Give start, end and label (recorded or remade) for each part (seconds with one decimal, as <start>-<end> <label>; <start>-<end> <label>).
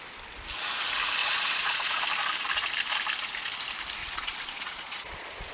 0.0-1.2 recorded; 1.2-2.0 remade; 2.0-4.0 recorded; 4.0-5.5 remade